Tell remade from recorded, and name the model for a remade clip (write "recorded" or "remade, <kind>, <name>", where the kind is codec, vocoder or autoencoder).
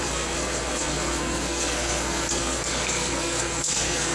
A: remade, codec, SNAC